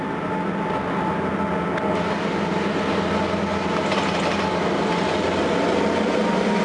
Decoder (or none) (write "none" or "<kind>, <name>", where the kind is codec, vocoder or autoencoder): none